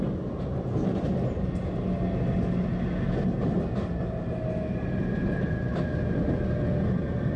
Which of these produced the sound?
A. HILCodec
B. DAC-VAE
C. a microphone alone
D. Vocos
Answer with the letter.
C